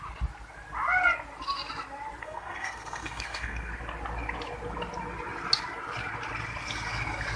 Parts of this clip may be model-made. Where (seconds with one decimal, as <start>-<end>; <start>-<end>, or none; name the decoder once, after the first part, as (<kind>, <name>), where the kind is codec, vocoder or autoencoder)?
2.2-3.7 (codec, SNAC)